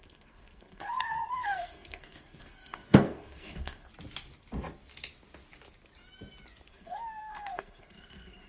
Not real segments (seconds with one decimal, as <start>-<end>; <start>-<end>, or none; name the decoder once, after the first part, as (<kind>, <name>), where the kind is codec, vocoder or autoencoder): 0.0-3.9 (codec, SNAC); 6.7-8.5